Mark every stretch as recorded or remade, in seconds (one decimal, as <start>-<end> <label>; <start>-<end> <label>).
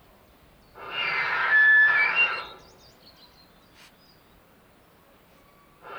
0.0-1.4 recorded; 1.4-2.4 remade; 2.4-6.0 recorded